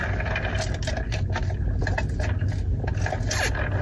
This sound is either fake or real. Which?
real